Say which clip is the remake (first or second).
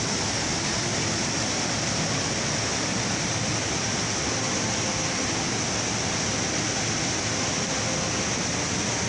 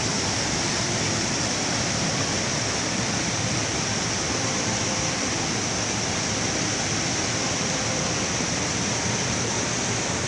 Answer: second